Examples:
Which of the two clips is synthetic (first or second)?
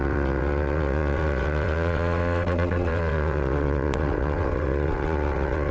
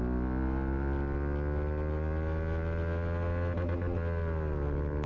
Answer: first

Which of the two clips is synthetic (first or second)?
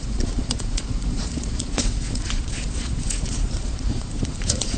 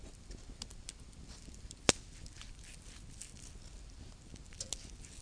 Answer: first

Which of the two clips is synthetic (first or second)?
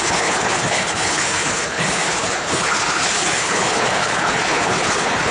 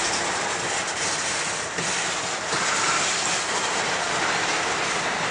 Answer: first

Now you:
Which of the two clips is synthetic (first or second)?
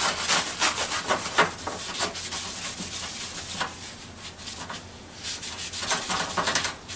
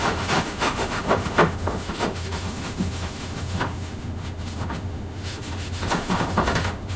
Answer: second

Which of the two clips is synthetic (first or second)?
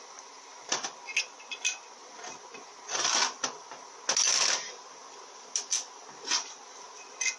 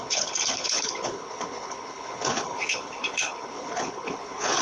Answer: second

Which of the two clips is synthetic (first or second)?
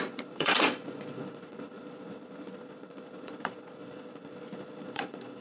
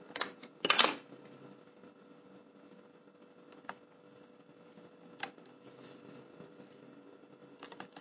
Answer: first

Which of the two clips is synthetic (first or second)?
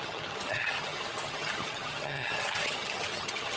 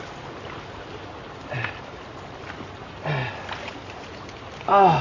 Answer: first